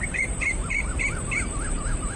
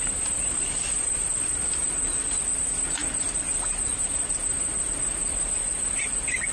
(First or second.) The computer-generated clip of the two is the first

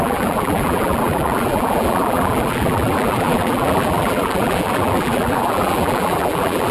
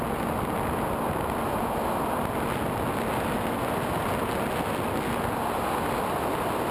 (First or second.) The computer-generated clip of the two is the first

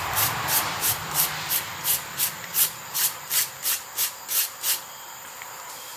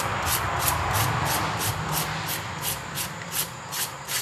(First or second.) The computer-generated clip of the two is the first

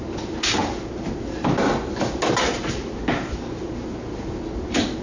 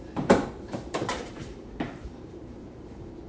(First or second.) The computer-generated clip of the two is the second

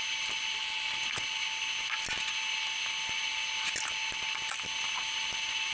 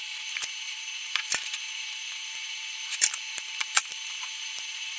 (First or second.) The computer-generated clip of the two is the second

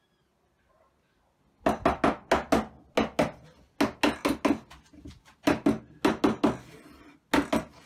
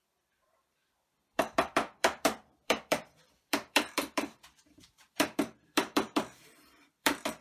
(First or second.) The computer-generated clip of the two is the second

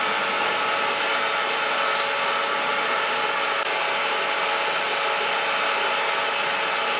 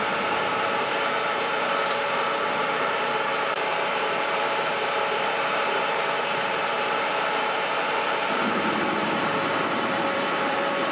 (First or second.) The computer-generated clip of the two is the second